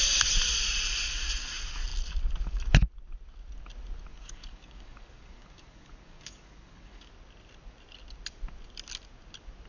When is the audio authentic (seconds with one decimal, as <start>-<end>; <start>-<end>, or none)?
0.0-4.1; 7.1-9.7